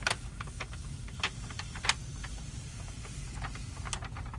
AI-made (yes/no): no